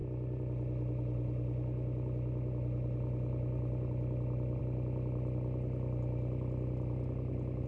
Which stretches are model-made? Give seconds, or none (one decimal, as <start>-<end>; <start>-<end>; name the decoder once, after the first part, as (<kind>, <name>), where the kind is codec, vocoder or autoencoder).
none